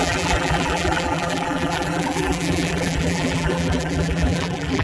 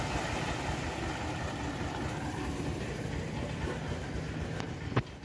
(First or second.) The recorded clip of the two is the second